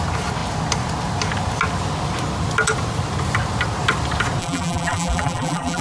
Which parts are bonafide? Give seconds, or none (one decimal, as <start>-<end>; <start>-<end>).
0.0-4.4